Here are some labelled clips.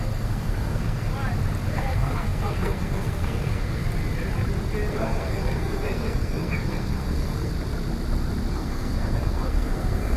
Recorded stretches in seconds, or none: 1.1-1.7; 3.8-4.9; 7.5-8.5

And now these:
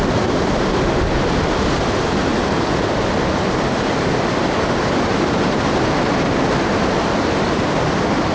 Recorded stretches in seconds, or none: 0.0-8.3

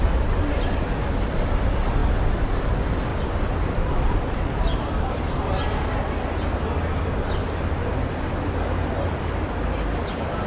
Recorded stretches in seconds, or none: 0.0-3.1; 4.3-10.5

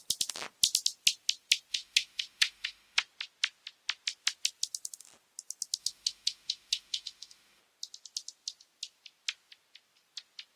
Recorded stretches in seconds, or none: 0.0-1.7; 3.0-5.8; 7.6-10.6

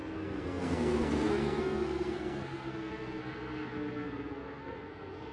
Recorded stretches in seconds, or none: none

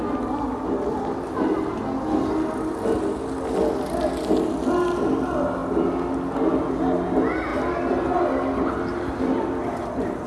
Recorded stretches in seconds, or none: 0.0-10.3